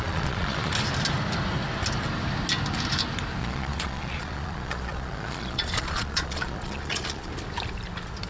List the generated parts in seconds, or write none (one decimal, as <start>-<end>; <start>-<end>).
0.0-0.7; 3.4-7.3